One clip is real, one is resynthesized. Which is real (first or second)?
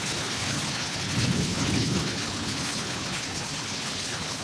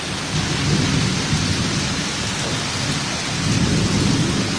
second